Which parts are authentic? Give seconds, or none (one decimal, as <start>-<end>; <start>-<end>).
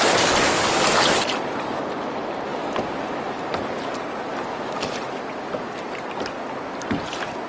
0.0-7.5